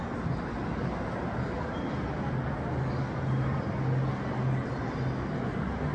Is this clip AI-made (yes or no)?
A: no